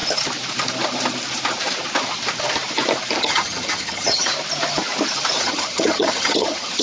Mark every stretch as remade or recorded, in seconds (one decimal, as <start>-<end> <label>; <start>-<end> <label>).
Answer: 0.0-3.2 recorded; 3.2-4.3 remade; 4.3-5.4 recorded; 5.4-6.8 remade